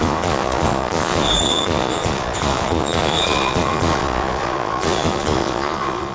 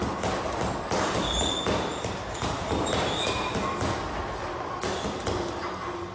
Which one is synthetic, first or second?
first